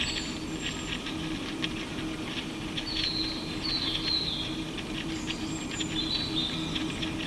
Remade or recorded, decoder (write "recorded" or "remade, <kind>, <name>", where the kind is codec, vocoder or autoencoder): recorded